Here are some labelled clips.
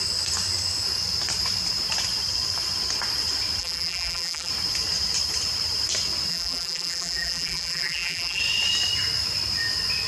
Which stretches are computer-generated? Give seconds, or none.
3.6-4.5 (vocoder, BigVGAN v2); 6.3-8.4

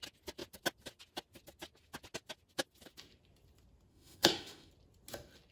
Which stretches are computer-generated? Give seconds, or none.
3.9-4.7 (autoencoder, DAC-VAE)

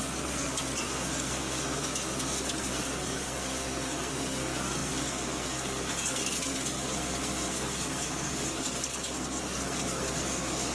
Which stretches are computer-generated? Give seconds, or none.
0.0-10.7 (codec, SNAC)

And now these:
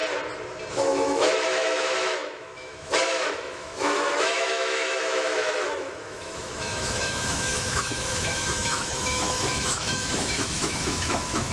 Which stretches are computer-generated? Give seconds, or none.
0.7-11.5 (autoencoder, DAC-VAE)

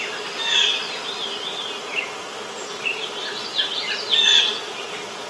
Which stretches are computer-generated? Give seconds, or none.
0.5-3.7 (vocoder, BigVGAN v2)